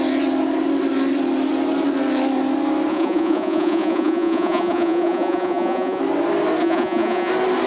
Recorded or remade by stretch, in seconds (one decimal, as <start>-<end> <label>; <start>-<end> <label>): 0.0-2.9 recorded; 2.9-6.0 remade; 6.0-6.6 recorded; 6.6-7.3 remade; 7.3-7.7 recorded